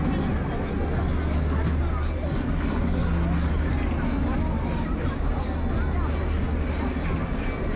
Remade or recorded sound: recorded